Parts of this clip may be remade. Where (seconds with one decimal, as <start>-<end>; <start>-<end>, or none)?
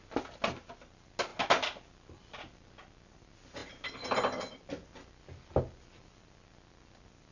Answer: none